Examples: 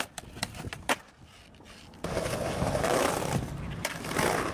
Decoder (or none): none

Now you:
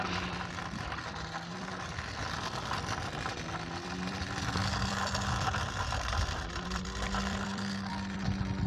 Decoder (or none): vocoder, BigVGAN v2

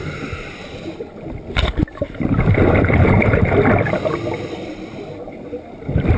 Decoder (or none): none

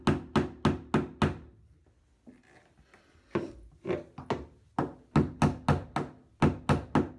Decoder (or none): none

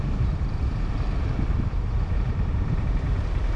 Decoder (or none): vocoder, BigVGAN v2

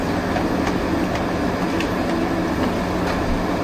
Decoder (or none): none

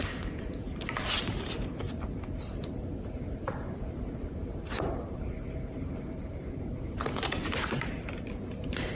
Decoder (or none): vocoder, BigVGAN v2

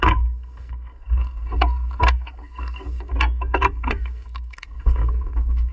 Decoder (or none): codec, SNAC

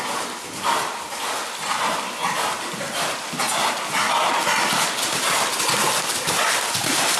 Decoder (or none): none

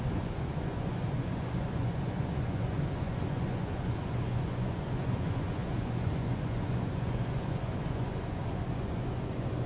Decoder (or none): vocoder, Vocos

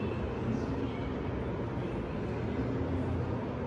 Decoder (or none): none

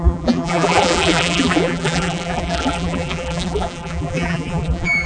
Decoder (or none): vocoder, BigVGAN v2